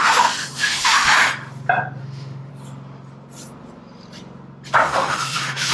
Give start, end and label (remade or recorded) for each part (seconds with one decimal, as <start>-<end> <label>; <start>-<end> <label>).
0.0-1.3 remade; 1.3-2.0 recorded; 2.0-2.5 remade; 2.5-4.8 recorded; 4.8-5.7 remade

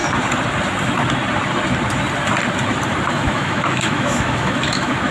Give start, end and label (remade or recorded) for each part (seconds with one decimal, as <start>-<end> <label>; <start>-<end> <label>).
0.0-3.1 recorded; 3.1-5.1 remade

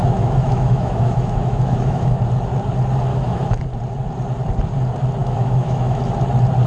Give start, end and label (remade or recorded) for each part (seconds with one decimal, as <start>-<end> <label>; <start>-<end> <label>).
0.0-2.2 remade; 2.2-3.1 recorded; 3.1-3.6 remade; 3.6-5.2 recorded; 5.2-6.0 remade; 6.0-6.7 recorded

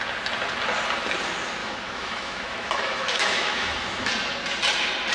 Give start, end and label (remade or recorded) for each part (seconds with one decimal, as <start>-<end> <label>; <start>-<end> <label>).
0.0-1.6 recorded; 1.6-4.1 remade; 4.1-5.1 recorded

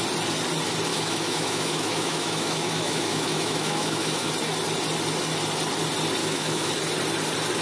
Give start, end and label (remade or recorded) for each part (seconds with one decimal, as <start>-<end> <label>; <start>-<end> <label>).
0.0-0.9 recorded; 0.9-4.3 remade; 4.3-6.2 recorded; 6.2-6.7 remade; 6.7-7.6 recorded

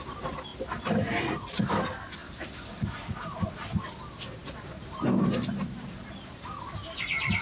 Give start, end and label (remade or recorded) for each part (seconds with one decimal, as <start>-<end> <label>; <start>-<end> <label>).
0.0-7.4 recorded

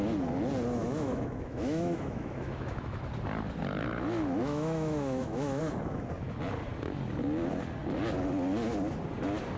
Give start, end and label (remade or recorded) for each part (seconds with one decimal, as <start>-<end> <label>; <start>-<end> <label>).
0.0-0.8 recorded; 0.8-3.0 remade; 3.0-4.4 recorded; 4.4-5.6 remade; 5.6-9.6 recorded